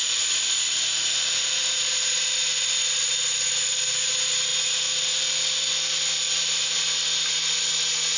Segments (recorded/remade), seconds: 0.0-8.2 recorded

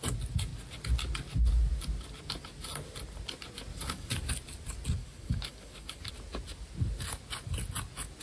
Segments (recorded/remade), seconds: 0.0-3.7 recorded; 3.7-4.3 remade; 4.3-5.0 recorded; 5.0-6.1 remade; 6.1-8.2 recorded

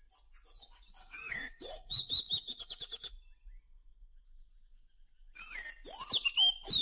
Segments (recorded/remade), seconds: 0.0-1.0 recorded; 1.0-3.1 remade; 3.1-6.8 recorded

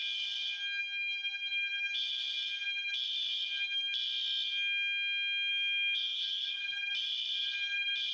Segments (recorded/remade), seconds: 0.0-5.5 recorded; 5.5-6.6 remade; 6.6-8.1 recorded

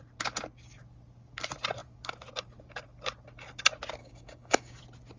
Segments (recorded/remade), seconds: 0.0-4.0 recorded; 4.0-4.8 remade; 4.8-5.2 recorded

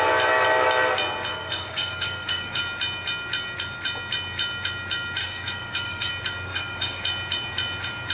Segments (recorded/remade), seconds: 0.0-1.3 recorded; 1.3-2.6 remade; 2.6-5.2 recorded; 5.2-6.1 remade; 6.1-6.5 recorded; 6.5-7.0 remade; 7.0-8.1 recorded

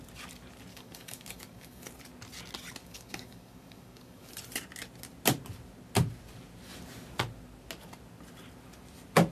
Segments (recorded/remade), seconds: 0.0-0.7 recorded; 0.7-1.9 remade; 1.9-2.8 recorded; 2.8-4.3 remade; 4.3-9.3 recorded